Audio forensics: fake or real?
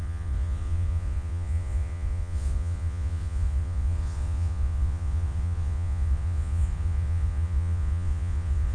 fake